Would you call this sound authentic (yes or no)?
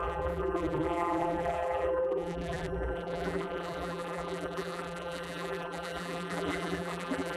no